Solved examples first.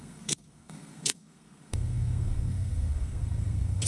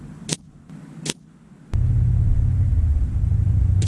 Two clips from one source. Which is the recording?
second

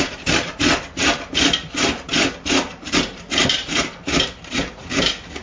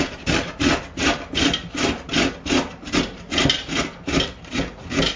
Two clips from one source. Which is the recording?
second